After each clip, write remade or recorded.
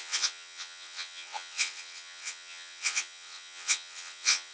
remade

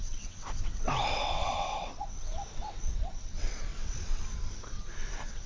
remade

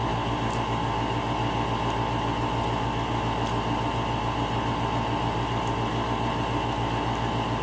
recorded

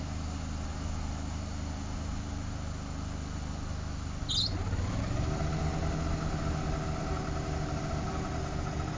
recorded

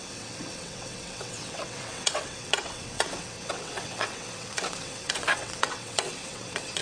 remade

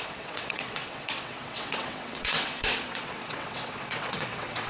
remade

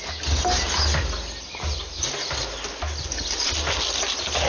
recorded